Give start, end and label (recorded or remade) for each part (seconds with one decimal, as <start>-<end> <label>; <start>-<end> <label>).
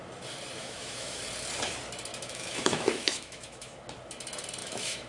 0.0-0.6 recorded; 0.6-1.2 remade; 1.2-2.1 recorded; 2.1-3.8 remade; 3.8-4.6 recorded; 4.6-5.1 remade